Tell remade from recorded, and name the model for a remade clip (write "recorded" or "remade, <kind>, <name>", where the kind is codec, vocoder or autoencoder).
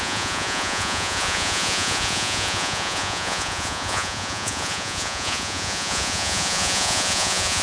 remade, vocoder, Vocos